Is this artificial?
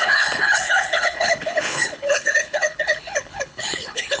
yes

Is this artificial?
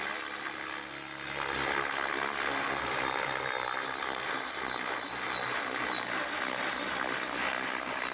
no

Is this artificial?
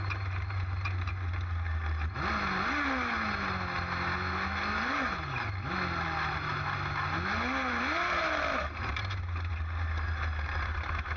no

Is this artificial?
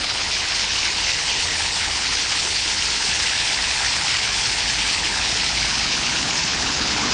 yes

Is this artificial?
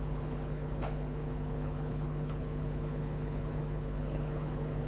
yes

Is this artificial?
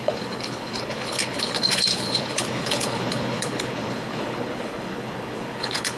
yes